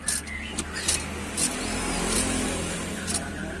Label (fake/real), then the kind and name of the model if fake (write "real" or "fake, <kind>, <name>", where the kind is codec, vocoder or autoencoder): real